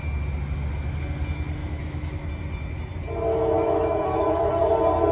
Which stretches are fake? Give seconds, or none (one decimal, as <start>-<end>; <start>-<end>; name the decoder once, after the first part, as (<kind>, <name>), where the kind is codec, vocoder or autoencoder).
1.6-2.3 (autoencoder, DAC-VAE); 3.3-4.5